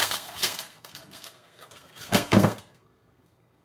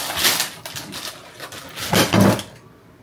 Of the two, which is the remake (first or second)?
first